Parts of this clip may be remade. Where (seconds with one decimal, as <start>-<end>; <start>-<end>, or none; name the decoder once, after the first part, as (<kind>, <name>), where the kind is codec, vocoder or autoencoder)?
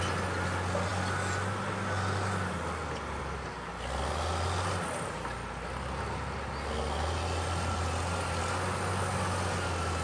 none